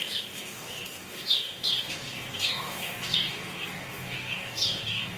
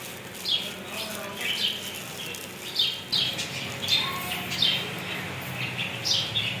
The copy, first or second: first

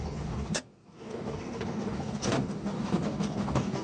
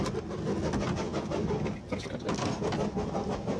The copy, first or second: first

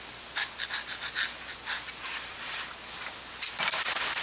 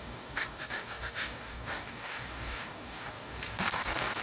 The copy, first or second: second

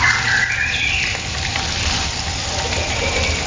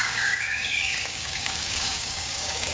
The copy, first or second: second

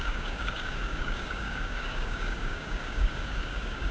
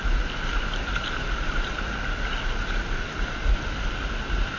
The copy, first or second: first